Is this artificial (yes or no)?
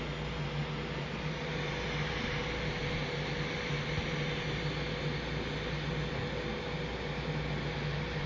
no